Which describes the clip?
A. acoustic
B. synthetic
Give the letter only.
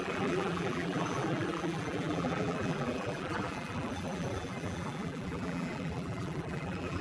B